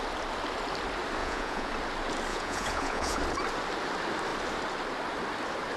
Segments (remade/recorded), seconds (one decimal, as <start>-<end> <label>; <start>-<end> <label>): 0.0-1.2 recorded; 1.2-1.7 remade; 1.7-2.3 recorded; 2.3-3.2 remade; 3.2-5.8 recorded